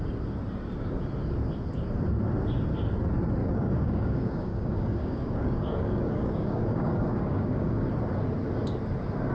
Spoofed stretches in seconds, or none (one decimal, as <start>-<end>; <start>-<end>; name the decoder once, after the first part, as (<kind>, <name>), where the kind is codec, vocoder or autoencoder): 3.4-7.9 (codec, DAC)

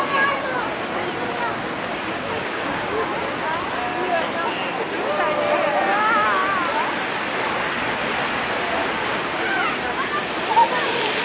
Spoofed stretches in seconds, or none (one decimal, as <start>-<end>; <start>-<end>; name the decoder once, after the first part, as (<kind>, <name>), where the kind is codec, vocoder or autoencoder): 1.9-3.1 (codec, DAC)

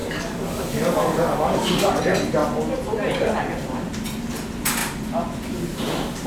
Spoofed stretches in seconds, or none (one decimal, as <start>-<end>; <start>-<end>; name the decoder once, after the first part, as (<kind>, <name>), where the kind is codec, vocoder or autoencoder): 0.0-2.0 (codec, DAC)

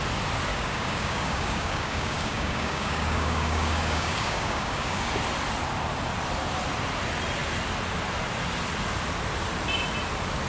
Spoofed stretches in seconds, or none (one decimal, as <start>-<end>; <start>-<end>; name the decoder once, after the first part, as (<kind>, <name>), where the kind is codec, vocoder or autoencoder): 0.5-5.1 (codec, DAC)